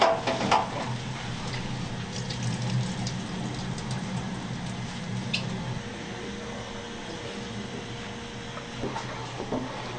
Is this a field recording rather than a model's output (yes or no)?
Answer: yes